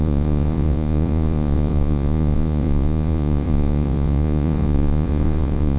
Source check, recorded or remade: remade